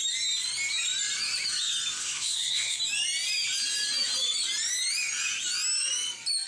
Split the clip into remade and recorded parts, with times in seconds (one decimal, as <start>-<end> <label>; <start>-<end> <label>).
0.0-2.0 recorded; 2.0-2.8 remade; 2.8-6.5 recorded